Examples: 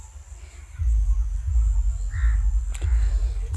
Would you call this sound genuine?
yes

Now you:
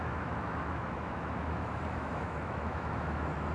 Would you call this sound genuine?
no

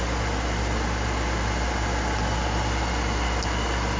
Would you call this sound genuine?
yes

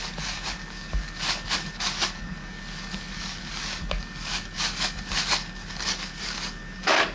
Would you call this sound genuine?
no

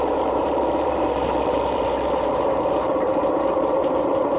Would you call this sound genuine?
no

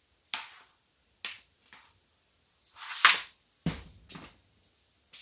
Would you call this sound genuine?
yes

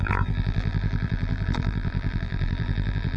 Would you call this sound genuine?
no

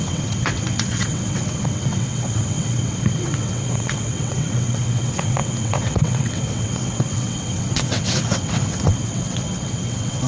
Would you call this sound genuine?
no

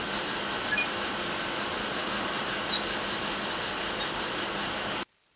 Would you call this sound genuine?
yes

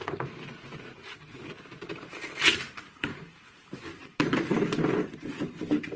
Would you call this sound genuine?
no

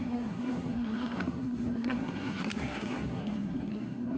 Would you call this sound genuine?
no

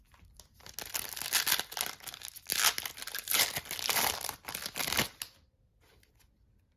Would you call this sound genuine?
yes